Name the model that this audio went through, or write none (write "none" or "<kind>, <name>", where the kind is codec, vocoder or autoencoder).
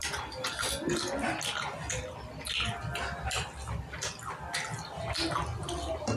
none